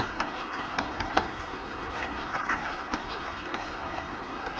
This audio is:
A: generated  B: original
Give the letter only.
A